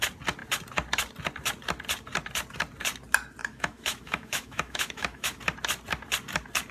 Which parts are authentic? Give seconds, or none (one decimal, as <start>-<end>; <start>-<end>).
0.0-3.4; 5.4-6.7